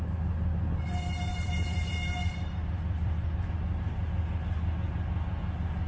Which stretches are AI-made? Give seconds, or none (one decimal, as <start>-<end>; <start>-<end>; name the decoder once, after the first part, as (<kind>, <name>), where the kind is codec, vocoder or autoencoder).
1.3-3.5 (vocoder, BigVGAN v2)